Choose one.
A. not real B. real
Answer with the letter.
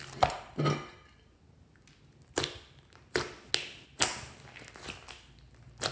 B